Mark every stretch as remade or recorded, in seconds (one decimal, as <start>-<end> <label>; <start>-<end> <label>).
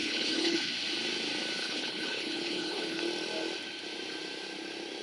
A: 0.0-0.7 remade; 0.7-1.6 recorded; 1.6-3.0 remade; 3.0-5.0 recorded